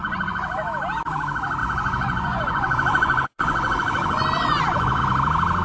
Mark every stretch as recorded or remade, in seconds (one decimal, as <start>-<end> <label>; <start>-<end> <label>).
0.0-0.7 remade; 0.7-1.6 recorded; 1.6-5.0 remade; 5.0-5.6 recorded